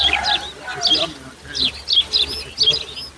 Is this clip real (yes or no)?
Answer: yes